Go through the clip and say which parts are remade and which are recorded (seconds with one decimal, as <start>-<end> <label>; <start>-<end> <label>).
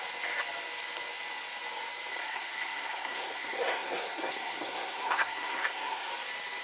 0.0-2.1 recorded; 2.1-6.1 remade; 6.1-6.6 recorded